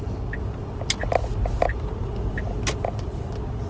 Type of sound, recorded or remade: recorded